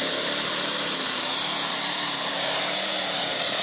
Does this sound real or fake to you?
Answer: real